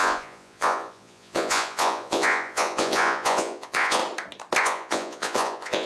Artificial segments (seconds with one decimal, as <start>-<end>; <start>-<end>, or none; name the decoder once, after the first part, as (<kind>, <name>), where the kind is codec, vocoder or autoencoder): 0.0-4.0 (vocoder, Vocos); 4.6-5.9